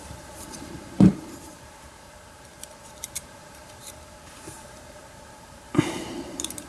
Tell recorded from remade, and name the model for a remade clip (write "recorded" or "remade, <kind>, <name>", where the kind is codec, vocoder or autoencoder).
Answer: remade, vocoder, BigVGAN v2